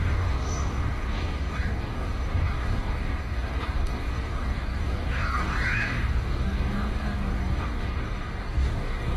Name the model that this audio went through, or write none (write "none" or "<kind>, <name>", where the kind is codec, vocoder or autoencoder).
codec, DAC